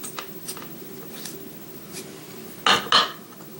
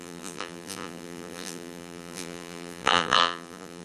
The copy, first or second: second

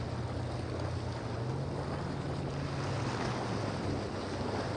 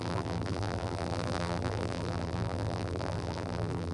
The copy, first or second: second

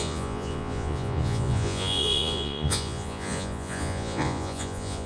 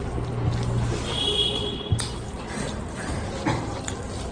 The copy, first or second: first